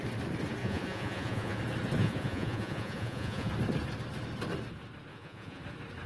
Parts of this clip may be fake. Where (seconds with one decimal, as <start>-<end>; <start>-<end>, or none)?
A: 0.6-1.6; 2.0-3.5; 5.1-5.6